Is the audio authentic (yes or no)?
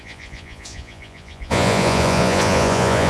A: no